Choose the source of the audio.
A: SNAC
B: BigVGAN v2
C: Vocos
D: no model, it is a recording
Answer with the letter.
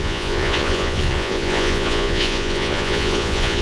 C